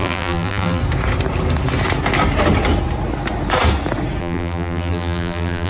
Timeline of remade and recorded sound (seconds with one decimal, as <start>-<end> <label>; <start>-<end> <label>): 0.0-0.8 remade; 0.8-4.2 recorded; 4.2-5.7 remade